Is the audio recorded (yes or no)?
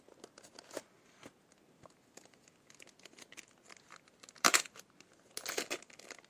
yes